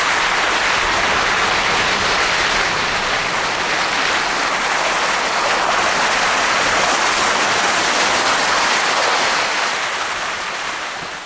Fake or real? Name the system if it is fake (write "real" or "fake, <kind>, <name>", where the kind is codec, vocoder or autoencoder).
real